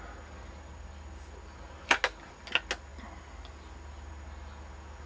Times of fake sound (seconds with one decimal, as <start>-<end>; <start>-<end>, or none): none